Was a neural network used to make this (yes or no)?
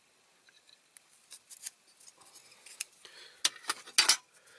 no